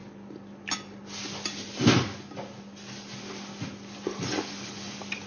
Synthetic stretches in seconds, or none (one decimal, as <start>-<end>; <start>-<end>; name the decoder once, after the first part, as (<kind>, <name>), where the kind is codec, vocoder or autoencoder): none